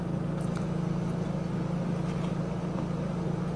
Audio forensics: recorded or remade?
recorded